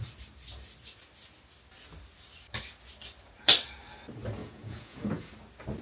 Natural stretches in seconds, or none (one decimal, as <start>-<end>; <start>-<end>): 0.0-4.4; 5.3-5.8